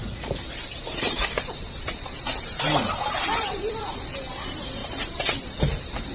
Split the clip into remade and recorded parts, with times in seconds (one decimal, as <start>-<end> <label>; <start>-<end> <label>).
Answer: 0.0-3.7 remade; 3.7-4.8 recorded; 4.8-5.6 remade; 5.6-6.1 recorded